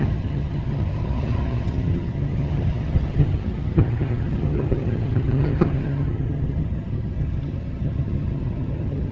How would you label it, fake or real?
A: fake